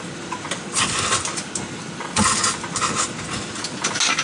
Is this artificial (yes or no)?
no